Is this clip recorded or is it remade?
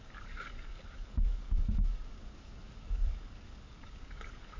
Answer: remade